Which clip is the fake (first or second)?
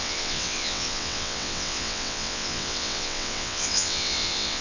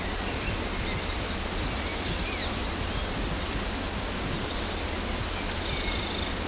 first